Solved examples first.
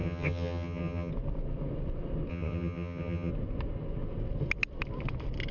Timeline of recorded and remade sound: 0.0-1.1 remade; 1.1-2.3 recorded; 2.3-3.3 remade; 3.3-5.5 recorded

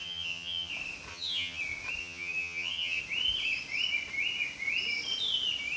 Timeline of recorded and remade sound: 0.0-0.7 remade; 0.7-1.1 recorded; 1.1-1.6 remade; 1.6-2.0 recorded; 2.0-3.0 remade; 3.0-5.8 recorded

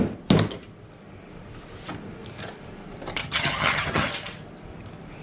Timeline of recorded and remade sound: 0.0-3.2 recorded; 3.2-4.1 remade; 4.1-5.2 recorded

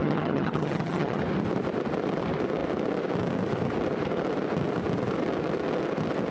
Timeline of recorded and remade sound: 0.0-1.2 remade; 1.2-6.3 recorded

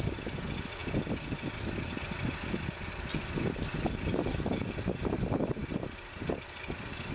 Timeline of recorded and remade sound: 0.0-7.1 recorded

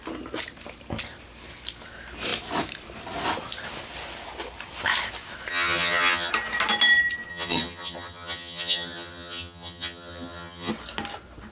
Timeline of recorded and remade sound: 0.0-5.5 recorded; 5.5-6.3 remade; 6.3-7.3 recorded; 7.3-10.7 remade; 10.7-11.5 recorded

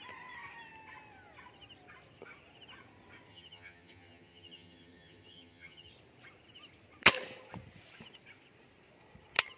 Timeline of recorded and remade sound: 0.0-3.3 recorded; 3.3-5.9 remade; 5.9-9.6 recorded

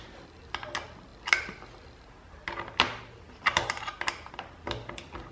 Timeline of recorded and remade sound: 0.0-5.3 recorded